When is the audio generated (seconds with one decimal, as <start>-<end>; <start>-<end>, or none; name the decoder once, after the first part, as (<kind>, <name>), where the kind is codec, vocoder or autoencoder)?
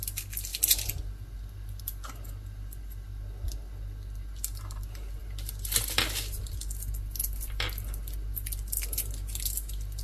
none